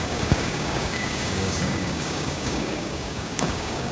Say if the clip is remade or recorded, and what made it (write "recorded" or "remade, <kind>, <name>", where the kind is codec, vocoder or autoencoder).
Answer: remade, codec, DAC